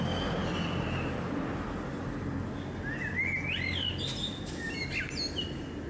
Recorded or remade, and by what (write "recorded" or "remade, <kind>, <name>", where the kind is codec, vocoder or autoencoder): recorded